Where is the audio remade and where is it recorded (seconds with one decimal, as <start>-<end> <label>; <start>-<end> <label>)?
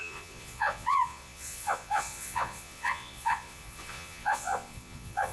0.0-5.3 remade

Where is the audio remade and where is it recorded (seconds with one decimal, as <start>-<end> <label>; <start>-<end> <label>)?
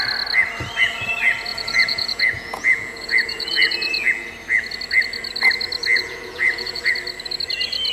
0.0-1.5 recorded; 1.5-4.1 remade; 4.1-5.9 recorded; 5.9-6.9 remade; 6.9-7.9 recorded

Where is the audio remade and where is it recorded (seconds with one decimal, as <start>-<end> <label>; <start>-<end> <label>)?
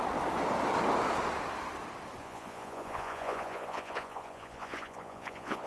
0.0-2.2 recorded; 2.2-5.7 remade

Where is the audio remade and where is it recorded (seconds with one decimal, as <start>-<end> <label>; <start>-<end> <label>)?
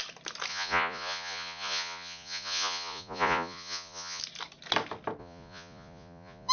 0.0-0.5 recorded; 0.5-4.2 remade; 4.2-5.2 recorded; 5.2-6.5 remade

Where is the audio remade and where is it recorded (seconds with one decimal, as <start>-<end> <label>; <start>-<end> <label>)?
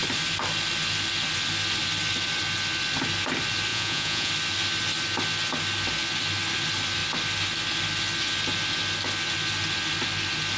0.0-3.7 recorded; 3.7-4.3 remade; 4.3-10.6 recorded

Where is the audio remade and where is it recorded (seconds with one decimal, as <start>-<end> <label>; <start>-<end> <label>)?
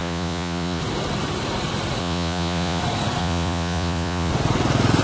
0.0-0.8 remade; 0.8-2.0 recorded; 2.0-2.8 remade; 2.8-3.2 recorded; 3.2-4.3 remade; 4.3-5.0 recorded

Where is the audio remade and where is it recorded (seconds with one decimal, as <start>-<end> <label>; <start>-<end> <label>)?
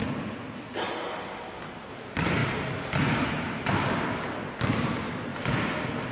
0.0-6.1 recorded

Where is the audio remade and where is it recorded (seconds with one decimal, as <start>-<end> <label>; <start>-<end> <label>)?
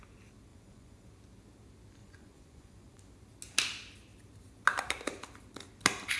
0.0-0.5 recorded; 0.5-1.1 remade; 1.1-2.0 recorded; 2.0-3.0 remade; 3.0-6.2 recorded